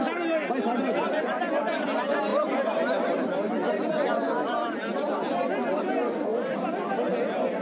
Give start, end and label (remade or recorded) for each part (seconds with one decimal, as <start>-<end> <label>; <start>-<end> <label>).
0.0-7.6 recorded